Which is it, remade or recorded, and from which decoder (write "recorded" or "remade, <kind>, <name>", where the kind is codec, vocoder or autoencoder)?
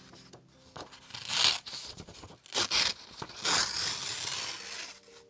recorded